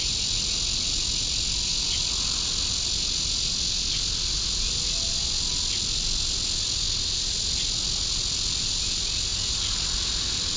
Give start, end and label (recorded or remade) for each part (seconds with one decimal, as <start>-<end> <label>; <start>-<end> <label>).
0.0-10.6 recorded